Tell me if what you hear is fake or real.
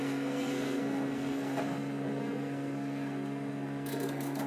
fake